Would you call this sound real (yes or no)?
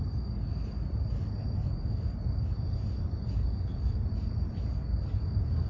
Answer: yes